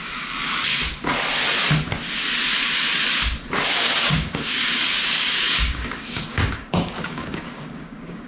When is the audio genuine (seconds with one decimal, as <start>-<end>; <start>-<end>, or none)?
0.7-3.6